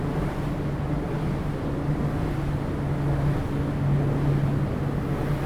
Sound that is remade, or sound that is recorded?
recorded